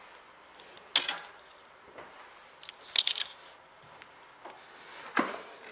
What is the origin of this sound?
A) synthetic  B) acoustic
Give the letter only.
B